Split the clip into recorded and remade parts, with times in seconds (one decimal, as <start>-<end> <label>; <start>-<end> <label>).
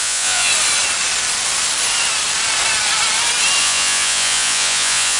0.0-0.5 remade; 0.5-3.6 recorded; 3.6-5.2 remade